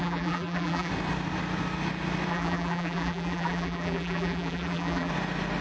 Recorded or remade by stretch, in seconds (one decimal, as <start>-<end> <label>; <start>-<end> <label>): 0.0-0.9 remade; 0.9-2.3 recorded; 2.3-5.1 remade; 5.1-5.6 recorded